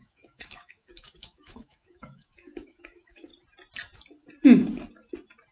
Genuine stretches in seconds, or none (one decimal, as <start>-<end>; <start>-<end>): 3.3-5.5